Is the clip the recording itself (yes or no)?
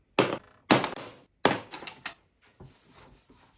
yes